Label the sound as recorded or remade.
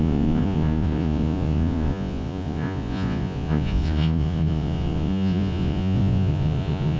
remade